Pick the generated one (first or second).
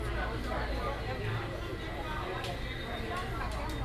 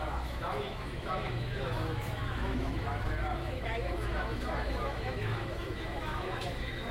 second